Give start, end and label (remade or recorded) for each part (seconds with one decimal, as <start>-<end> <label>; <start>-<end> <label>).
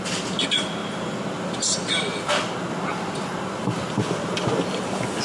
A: 0.0-5.2 recorded